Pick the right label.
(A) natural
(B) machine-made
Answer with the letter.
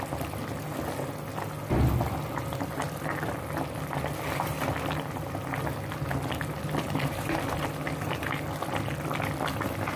A